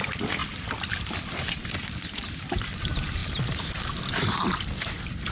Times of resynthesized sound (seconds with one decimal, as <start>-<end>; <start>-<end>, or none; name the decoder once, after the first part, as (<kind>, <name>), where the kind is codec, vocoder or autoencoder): 0.0-0.4 (vocoder, BigVGAN v2); 1.8-3.2; 4.0-5.3